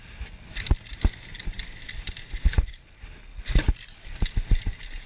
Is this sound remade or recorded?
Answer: recorded